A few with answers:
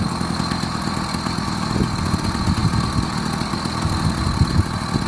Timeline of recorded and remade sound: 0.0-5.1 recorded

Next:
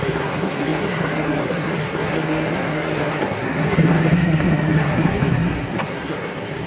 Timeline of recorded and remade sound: 0.0-6.7 remade

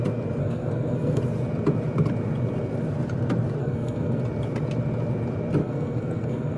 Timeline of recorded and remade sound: 0.0-0.4 recorded; 0.4-1.2 remade; 1.2-3.6 recorded; 3.6-4.2 remade; 4.2-5.6 recorded; 5.6-6.6 remade

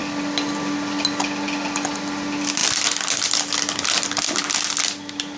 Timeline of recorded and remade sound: 0.0-5.4 recorded